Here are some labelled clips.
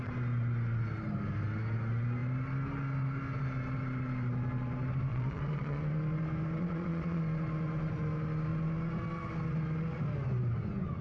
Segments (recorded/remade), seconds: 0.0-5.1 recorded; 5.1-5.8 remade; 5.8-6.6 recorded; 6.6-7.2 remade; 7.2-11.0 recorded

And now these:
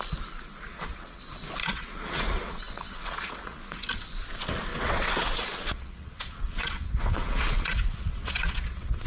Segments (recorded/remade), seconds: 0.0-0.7 recorded; 0.7-1.2 remade; 1.2-1.6 recorded; 1.6-3.9 remade; 3.9-4.7 recorded; 4.7-9.1 remade

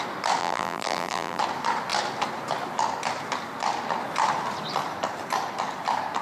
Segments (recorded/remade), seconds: 0.0-0.4 recorded; 0.4-1.4 remade; 1.4-6.2 recorded